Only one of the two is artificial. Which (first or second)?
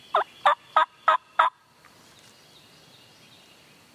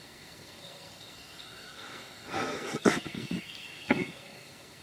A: second